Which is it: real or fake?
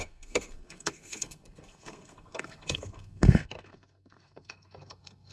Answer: fake